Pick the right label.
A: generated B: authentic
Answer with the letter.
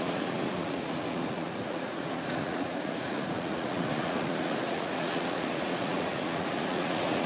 A